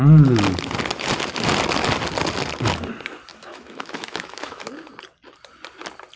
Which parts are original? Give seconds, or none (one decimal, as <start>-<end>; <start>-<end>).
0.0-3.3; 4.7-6.2